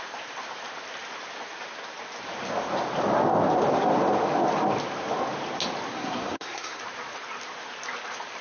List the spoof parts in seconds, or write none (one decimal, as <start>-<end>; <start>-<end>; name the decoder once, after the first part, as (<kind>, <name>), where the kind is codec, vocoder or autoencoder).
5.9-6.8 (codec, SNAC)